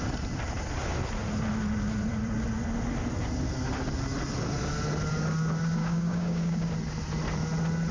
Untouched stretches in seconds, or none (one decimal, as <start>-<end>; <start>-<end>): 0.0-5.8; 6.7-7.9